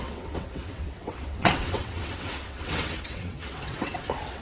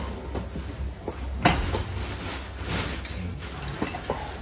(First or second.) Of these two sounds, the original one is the second